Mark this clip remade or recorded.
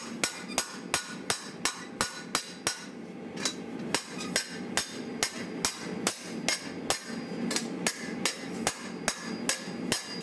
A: recorded